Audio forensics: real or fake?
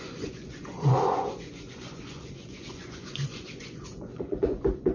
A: fake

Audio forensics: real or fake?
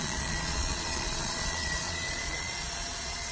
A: fake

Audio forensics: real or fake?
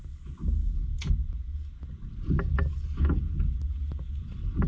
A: real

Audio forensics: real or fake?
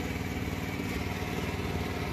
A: real